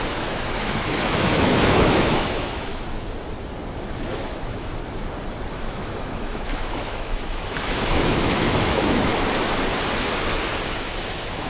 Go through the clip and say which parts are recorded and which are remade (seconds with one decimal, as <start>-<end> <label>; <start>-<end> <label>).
0.0-2.7 remade; 2.7-4.1 recorded; 4.1-4.8 remade; 4.8-5.5 recorded; 5.5-9.1 remade; 9.1-10.7 recorded; 10.7-11.5 remade